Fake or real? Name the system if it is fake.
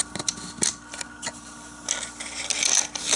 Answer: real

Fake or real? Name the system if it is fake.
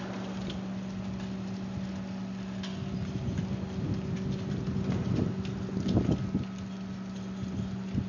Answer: real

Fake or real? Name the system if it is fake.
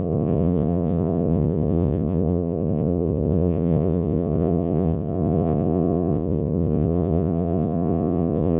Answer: fake, vocoder, Vocos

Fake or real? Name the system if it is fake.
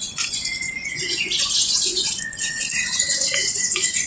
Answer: fake, vocoder, Vocos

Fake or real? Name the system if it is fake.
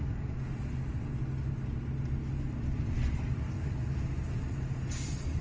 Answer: real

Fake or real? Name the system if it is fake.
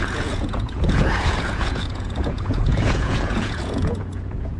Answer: fake, vocoder, Vocos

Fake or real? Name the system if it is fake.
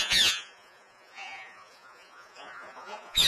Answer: fake, vocoder, Vocos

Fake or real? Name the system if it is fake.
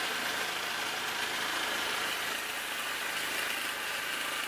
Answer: real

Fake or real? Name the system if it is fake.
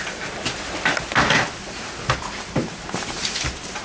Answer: real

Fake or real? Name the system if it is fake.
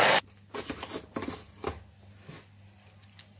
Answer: real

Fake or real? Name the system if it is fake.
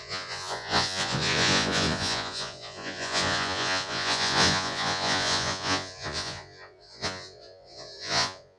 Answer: fake, vocoder, Vocos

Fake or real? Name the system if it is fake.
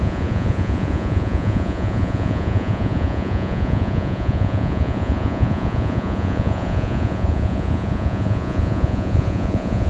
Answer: fake, vocoder, Vocos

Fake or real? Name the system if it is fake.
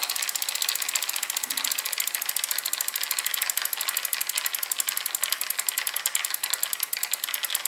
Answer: real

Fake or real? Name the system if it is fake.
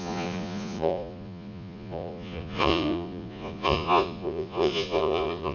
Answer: fake, vocoder, Vocos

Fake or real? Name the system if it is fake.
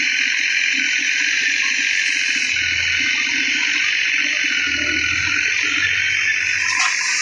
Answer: real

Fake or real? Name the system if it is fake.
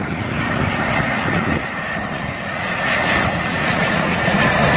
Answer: fake, vocoder, Vocos